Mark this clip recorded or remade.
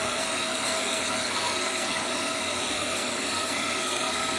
remade